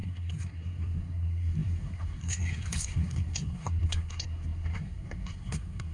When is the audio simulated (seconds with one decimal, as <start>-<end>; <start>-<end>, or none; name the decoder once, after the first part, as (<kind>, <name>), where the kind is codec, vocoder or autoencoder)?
0.0-5.9 (codec, SNAC)